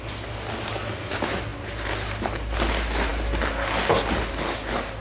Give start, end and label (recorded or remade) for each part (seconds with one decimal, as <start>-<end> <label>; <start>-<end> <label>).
0.0-5.0 recorded